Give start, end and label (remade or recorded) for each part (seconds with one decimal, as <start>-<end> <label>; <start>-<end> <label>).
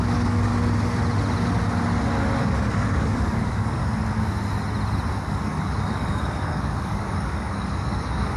0.0-0.5 remade; 0.5-2.4 recorded; 2.4-3.8 remade; 3.8-5.1 recorded; 5.1-8.4 remade